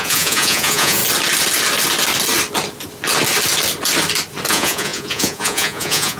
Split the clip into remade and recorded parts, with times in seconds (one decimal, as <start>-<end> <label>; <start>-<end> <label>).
0.0-1.0 remade; 1.0-4.5 recorded; 4.5-6.2 remade